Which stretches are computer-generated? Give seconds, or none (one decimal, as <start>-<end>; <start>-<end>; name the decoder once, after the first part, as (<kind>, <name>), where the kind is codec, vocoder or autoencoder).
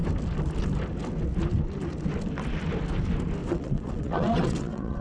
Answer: 3.4-5.0 (vocoder, WaveNeXt)